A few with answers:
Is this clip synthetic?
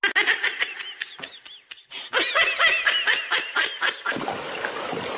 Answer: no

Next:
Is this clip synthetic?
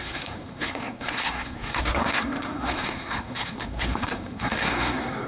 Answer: yes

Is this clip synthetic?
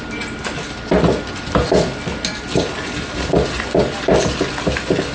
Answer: no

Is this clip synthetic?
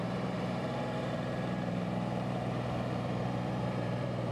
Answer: yes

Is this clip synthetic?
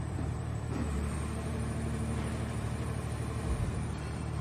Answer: yes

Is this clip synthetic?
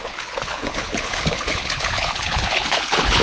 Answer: yes